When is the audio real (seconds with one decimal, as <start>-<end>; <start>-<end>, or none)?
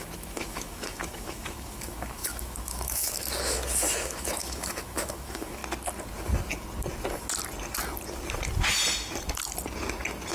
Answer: 5.6-10.3